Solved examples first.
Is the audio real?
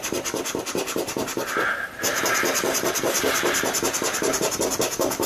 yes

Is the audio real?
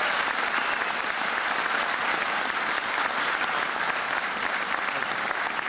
yes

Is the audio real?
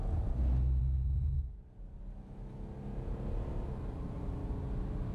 yes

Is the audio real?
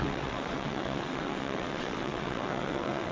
no